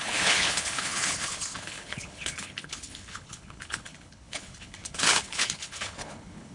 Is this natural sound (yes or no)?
no